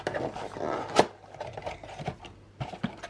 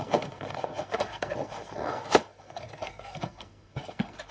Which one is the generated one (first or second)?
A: second